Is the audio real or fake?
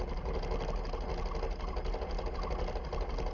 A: real